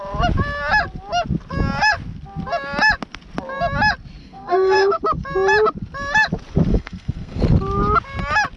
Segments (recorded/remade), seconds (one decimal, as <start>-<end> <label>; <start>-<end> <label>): 0.0-4.2 recorded; 4.2-5.0 remade; 5.0-6.7 recorded; 6.7-7.4 remade; 7.4-8.6 recorded